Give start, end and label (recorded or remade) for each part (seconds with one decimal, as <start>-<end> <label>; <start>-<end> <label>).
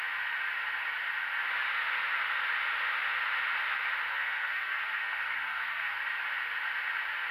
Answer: 0.0-4.1 recorded; 4.1-6.0 remade; 6.0-7.3 recorded